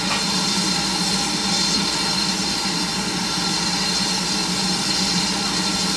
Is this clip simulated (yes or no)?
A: no